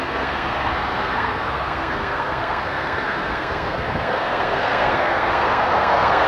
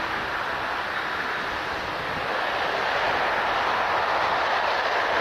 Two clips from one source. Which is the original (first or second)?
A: second